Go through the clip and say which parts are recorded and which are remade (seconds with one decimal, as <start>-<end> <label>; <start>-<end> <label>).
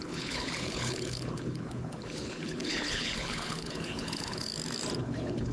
0.0-4.5 remade; 4.5-5.0 recorded; 5.0-5.5 remade